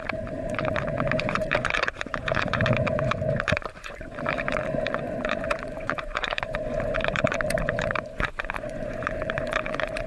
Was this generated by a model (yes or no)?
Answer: yes